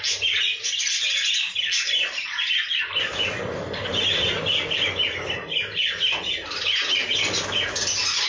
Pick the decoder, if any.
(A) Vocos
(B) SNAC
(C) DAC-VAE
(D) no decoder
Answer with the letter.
D